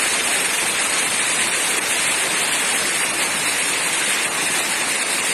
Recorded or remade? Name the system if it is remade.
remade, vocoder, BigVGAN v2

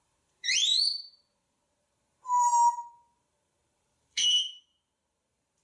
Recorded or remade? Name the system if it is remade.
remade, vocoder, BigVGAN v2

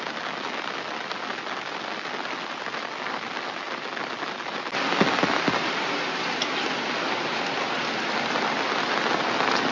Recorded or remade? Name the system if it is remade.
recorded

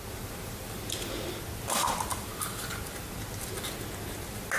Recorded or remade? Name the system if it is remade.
recorded